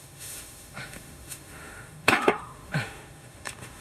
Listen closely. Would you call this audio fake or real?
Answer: fake